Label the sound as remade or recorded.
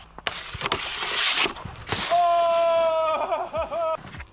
recorded